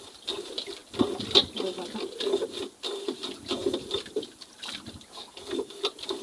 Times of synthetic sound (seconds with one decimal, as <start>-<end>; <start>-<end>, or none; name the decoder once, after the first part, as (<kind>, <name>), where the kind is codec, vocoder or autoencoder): 0.0-0.8 (vocoder, BigVGAN v2); 2.1-6.2